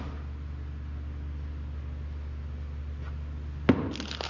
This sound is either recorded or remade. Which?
recorded